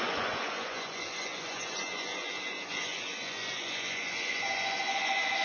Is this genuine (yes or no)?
no